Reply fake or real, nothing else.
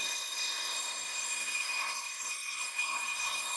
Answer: fake